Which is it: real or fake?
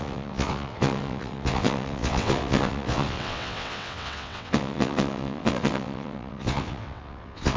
fake